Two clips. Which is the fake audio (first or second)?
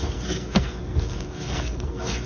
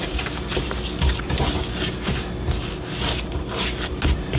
first